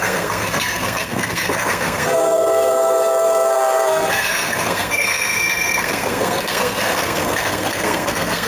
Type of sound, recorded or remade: remade